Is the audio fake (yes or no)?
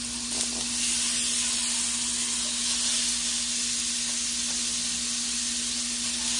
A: no